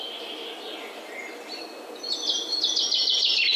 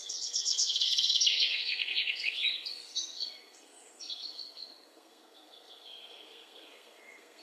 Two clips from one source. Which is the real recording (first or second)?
first